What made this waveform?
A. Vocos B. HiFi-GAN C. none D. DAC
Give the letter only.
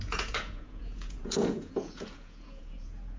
A